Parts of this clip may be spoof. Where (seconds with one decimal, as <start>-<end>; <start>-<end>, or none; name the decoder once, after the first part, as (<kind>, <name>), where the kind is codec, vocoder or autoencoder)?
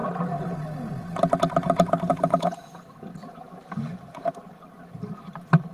2.1-2.8 (vocoder, Vocos); 3.2-4.3